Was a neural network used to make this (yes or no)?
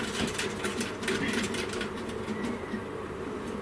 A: no